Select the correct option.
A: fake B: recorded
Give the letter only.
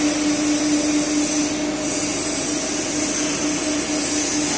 B